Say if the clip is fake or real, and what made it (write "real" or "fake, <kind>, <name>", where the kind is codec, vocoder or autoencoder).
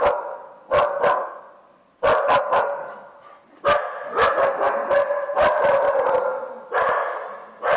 real